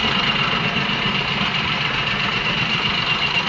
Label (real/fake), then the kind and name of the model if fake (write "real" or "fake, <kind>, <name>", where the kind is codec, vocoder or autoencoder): real